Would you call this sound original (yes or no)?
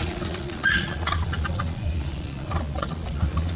no